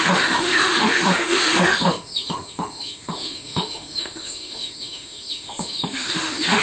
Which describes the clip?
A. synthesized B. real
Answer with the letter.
A